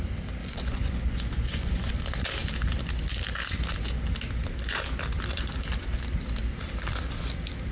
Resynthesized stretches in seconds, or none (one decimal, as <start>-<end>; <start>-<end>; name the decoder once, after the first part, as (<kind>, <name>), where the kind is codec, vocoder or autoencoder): 0.4-2.0 (vocoder, Vocos)